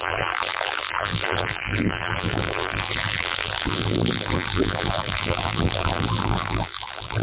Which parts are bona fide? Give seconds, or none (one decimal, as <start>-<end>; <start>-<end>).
none